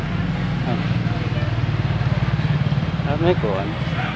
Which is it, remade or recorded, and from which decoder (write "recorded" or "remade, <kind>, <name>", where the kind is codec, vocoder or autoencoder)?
recorded